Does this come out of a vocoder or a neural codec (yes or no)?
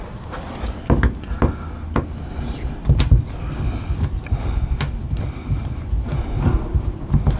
no